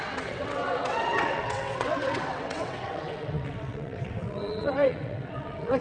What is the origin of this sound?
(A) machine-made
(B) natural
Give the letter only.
A